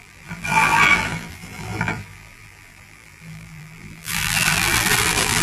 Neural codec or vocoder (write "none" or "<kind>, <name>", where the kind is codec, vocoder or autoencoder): vocoder, BigVGAN v2